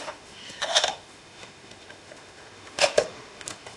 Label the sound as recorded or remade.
remade